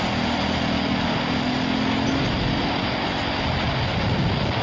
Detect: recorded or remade recorded